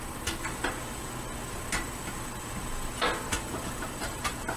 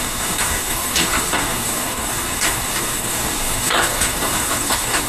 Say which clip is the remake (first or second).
second